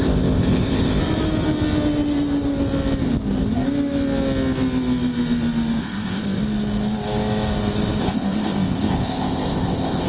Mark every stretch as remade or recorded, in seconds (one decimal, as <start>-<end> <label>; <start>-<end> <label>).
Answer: 0.0-1.0 remade; 1.0-5.8 recorded; 5.8-6.4 remade; 6.4-8.0 recorded; 8.0-10.1 remade